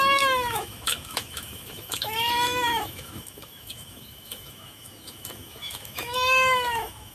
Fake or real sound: fake